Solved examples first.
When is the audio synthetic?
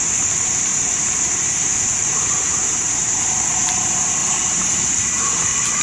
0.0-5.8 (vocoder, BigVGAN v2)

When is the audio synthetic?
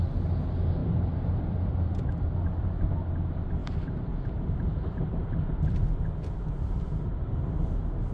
0.8-2.9 (vocoder, BigVGAN v2)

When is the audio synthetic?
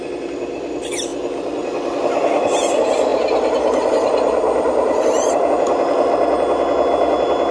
3.1-5.5 (vocoder, BigVGAN v2)